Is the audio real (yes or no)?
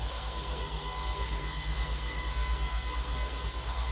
no